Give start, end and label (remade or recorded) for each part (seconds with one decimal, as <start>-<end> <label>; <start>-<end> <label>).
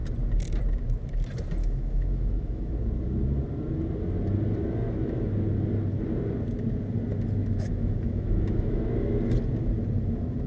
0.0-1.6 recorded; 1.6-2.7 remade; 2.7-7.4 recorded; 7.4-8.8 remade; 8.8-10.5 recorded